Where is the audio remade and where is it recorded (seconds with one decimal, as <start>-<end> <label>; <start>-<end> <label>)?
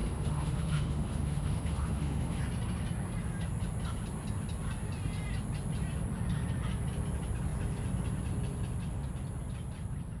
0.0-2.4 remade; 2.4-10.2 recorded